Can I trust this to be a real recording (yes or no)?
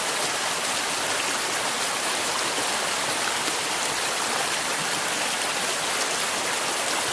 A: yes